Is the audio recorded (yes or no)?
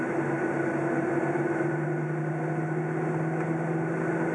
yes